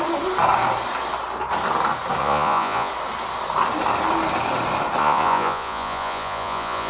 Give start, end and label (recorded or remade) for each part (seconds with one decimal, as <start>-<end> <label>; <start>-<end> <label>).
0.0-2.2 recorded; 2.2-2.9 remade; 2.9-5.0 recorded; 5.0-6.9 remade